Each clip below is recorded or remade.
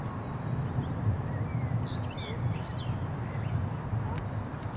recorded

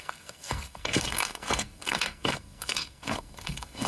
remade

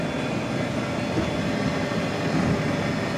recorded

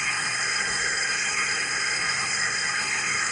remade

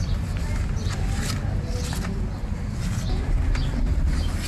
recorded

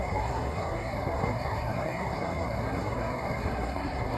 remade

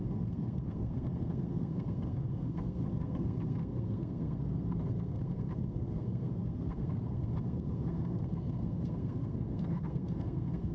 remade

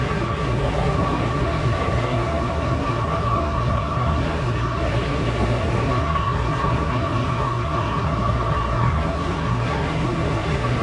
remade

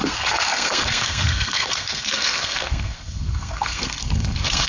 remade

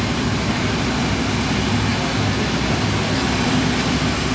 recorded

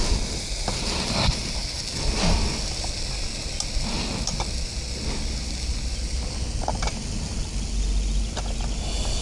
recorded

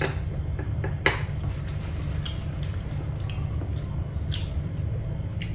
recorded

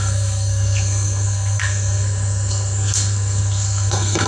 remade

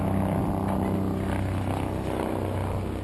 recorded